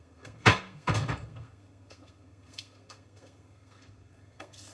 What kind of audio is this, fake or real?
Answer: fake